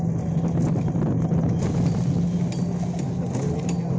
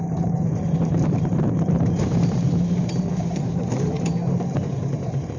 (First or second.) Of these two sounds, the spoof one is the second